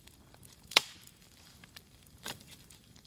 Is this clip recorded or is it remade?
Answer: remade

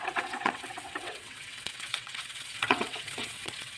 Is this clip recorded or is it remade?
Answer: remade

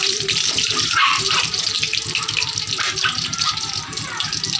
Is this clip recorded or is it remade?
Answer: remade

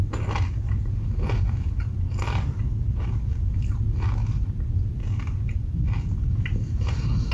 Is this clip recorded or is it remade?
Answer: recorded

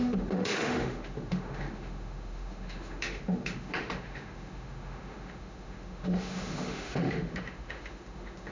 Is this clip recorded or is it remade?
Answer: remade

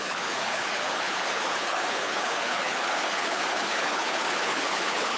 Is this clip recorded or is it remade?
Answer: remade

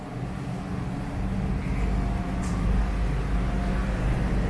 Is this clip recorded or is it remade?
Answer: recorded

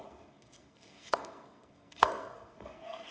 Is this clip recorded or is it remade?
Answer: remade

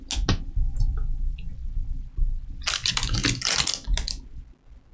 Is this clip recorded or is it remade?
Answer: recorded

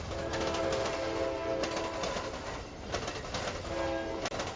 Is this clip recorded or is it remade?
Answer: recorded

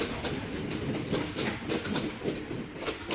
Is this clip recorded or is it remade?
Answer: recorded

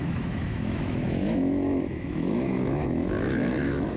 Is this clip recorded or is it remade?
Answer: remade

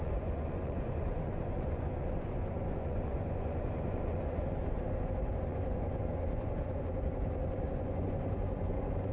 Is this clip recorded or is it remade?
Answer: remade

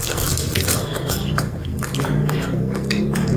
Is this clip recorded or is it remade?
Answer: remade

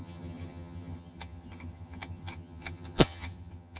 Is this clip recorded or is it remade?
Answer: remade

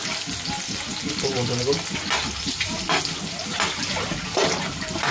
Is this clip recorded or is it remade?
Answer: recorded